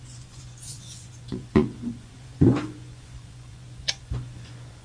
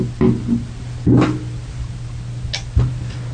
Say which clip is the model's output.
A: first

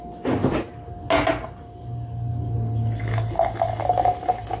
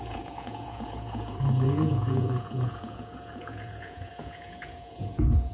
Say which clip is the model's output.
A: second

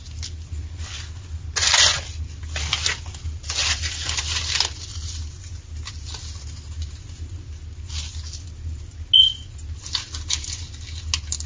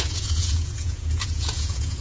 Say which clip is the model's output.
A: second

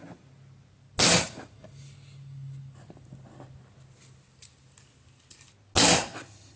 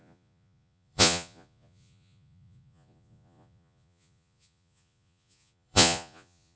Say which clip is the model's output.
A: second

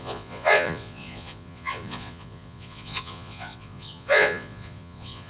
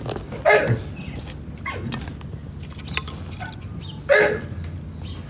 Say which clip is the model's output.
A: first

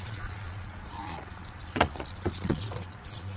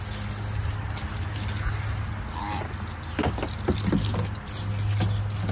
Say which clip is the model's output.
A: first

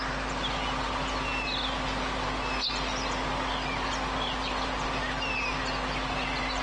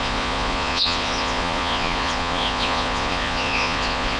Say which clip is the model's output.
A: second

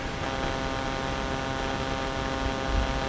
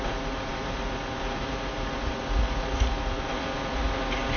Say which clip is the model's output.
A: second